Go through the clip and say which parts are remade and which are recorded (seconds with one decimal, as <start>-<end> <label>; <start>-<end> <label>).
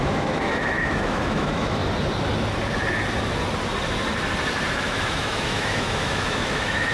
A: 0.0-1.8 remade; 1.8-4.8 recorded; 4.8-6.9 remade